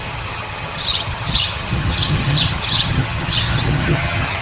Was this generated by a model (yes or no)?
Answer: yes